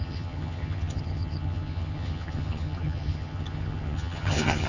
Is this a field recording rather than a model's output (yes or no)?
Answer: no